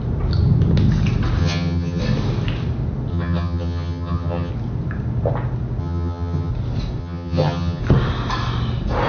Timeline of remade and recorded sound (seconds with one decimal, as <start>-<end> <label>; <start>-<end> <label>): 0.0-1.4 recorded; 1.4-2.0 remade; 2.0-3.1 recorded; 3.1-4.5 remade; 4.5-5.8 recorded; 5.8-6.5 remade; 6.5-7.0 recorded; 7.0-7.8 remade; 7.8-9.1 recorded